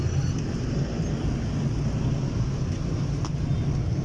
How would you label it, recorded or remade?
recorded